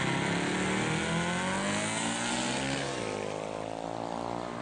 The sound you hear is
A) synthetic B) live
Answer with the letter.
B